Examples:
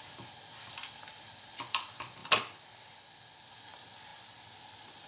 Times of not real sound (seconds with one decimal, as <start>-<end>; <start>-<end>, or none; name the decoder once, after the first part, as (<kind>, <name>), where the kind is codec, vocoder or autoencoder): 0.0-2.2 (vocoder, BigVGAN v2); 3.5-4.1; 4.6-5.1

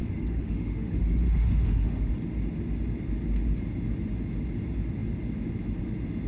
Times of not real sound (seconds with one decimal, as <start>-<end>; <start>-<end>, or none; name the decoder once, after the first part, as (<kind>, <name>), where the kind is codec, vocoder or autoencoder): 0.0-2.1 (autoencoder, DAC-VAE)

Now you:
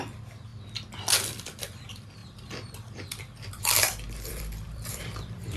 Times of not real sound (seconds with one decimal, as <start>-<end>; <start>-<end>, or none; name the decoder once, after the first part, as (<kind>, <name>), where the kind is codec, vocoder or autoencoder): 0.0-0.5 (vocoder, BigVGAN v2); 1.6-5.6

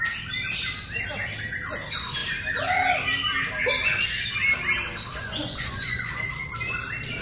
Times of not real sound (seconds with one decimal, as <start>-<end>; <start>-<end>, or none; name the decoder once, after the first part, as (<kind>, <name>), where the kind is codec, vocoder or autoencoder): 5.2-6.1 (vocoder, Vocos)

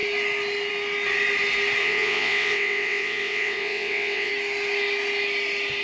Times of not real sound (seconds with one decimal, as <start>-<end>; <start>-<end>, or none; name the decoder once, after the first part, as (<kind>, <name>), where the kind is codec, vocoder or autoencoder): 1.8-4.3 (vocoder, WaveNeXt)

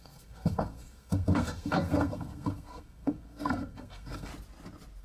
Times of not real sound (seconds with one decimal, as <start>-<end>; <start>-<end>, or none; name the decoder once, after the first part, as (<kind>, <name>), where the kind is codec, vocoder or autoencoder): 0.0-4.3 (codec, SNAC)